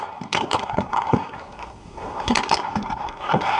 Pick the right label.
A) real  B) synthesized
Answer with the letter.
B